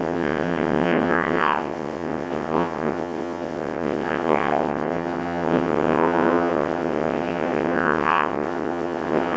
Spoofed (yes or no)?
yes